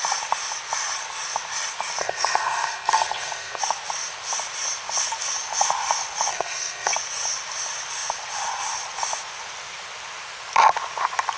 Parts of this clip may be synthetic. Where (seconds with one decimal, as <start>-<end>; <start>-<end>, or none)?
2.0-3.6; 6.3-6.9